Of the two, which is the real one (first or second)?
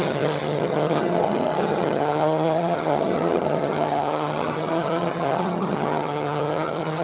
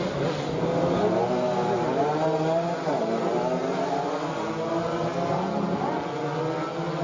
second